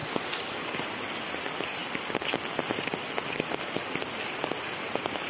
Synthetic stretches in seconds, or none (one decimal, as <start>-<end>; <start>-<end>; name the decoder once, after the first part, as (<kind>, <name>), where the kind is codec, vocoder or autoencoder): none